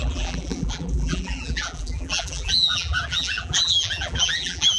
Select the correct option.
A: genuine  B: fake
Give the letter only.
B